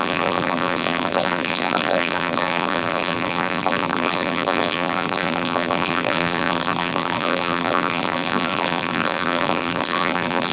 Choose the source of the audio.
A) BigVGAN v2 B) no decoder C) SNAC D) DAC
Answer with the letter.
A